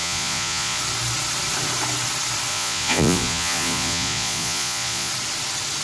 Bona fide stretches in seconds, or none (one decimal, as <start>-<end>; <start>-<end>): 0.8-2.5; 5.1-5.8